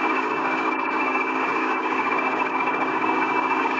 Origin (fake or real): fake